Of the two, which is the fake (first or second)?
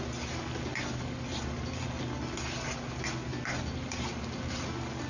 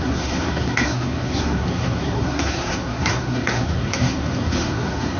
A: second